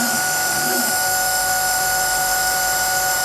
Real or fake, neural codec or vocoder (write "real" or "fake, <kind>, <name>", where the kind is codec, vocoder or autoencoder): fake, autoencoder, DAC-VAE